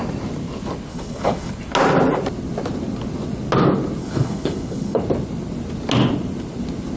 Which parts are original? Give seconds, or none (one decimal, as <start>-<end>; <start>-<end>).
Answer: 0.0-0.9; 1.5-4.0; 5.0-7.0